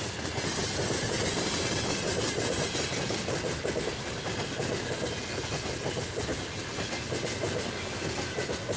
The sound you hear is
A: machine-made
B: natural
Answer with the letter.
B